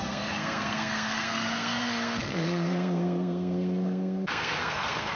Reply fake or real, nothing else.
fake